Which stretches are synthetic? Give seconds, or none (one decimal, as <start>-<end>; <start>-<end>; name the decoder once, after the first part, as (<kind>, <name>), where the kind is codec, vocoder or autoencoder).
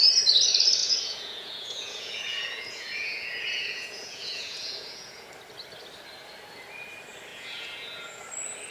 0.8-5.3 (vocoder, Vocos); 7.3-8.2